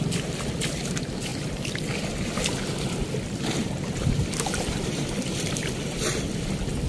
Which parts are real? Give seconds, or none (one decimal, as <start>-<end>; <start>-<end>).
none